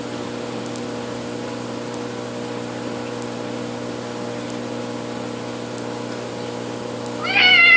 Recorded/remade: recorded